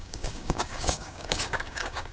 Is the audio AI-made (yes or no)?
yes